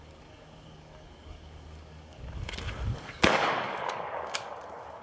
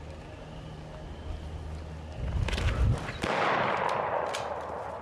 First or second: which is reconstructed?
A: first